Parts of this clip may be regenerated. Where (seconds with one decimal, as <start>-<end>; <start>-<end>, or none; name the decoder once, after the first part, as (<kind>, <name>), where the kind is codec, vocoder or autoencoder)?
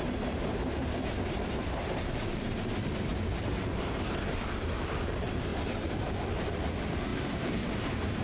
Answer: 0.0-0.8 (vocoder, BigVGAN v2); 1.5-3.1; 3.8-5.5; 6.0-8.2